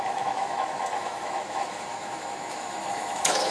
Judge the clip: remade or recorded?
remade